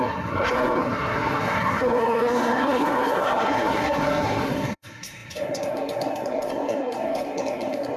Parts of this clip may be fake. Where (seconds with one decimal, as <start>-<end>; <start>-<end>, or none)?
0.0-8.0